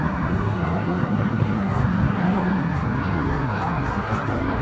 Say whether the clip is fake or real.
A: fake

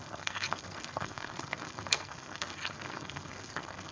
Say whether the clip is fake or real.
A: fake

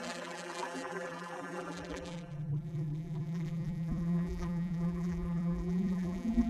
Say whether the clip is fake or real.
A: fake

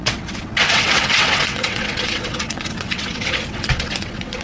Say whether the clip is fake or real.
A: fake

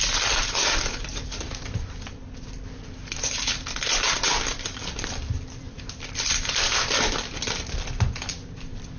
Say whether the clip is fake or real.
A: fake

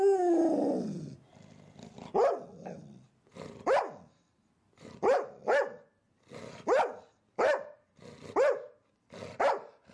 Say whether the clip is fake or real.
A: real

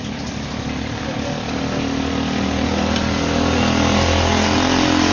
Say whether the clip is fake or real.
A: real